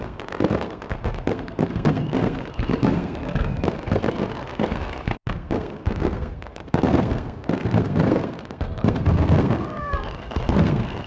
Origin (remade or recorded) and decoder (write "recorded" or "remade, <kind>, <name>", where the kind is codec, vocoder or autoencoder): remade, codec, SNAC